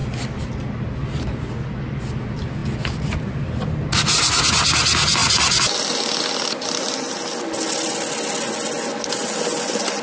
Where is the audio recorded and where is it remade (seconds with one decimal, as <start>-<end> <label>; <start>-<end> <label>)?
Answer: 0.0-10.0 recorded